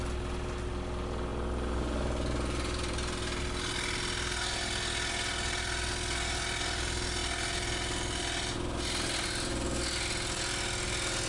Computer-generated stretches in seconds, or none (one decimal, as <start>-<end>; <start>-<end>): none